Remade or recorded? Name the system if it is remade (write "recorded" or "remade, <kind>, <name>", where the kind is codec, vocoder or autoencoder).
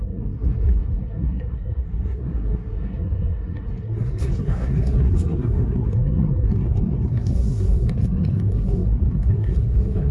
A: remade, codec, SNAC